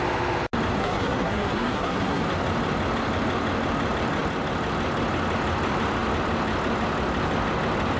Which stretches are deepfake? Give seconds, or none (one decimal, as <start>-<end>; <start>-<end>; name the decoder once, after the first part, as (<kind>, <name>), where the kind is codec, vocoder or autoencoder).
0.8-2.2 (codec, SNAC)